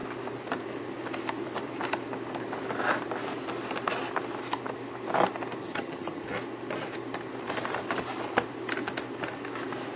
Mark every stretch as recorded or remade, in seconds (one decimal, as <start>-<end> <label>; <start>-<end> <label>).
0.0-5.6 recorded; 5.6-6.2 remade; 6.2-10.0 recorded